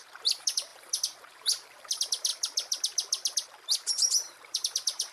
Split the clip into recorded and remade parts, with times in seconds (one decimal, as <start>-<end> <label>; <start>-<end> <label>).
0.0-5.1 remade